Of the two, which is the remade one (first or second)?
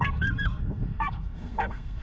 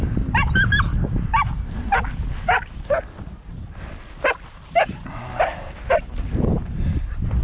first